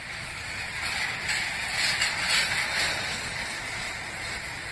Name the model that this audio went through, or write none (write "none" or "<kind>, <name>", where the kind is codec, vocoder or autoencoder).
none